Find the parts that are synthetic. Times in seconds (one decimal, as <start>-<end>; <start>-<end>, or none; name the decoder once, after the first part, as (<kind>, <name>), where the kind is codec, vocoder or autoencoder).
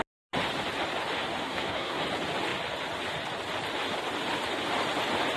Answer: 1.4-2.0 (codec, SNAC)